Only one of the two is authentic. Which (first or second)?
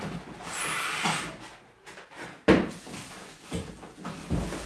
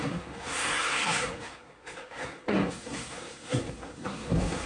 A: first